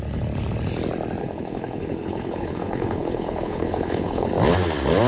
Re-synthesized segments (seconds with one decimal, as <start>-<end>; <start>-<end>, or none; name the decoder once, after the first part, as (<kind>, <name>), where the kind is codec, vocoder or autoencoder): 1.2-4.3 (codec, HILCodec)